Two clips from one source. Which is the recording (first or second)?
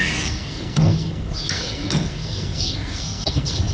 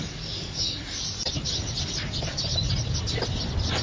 second